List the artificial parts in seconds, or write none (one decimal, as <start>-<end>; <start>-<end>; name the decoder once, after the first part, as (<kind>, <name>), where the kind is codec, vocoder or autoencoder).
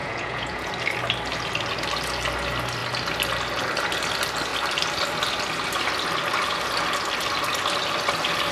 0.0-0.7 (vocoder, Vocos)